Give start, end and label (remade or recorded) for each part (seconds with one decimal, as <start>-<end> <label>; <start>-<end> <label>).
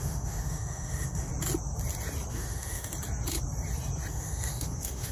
0.0-1.3 remade; 1.3-2.3 recorded; 2.3-2.9 remade; 2.9-4.1 recorded; 4.1-5.1 remade